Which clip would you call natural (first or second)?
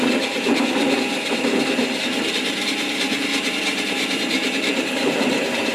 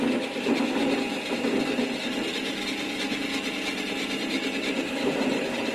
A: second